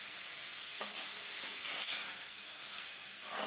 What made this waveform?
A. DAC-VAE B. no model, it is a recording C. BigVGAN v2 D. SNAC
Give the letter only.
D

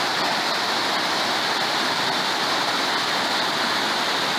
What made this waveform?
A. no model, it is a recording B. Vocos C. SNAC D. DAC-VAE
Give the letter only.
A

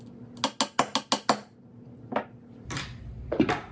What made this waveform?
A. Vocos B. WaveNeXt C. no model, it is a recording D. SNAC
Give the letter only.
C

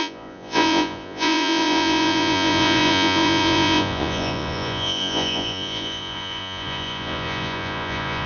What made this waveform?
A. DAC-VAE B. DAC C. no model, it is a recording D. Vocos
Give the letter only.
D